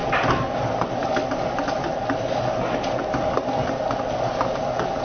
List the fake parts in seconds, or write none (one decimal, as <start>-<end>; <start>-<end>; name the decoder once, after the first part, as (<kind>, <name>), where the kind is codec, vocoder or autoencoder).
none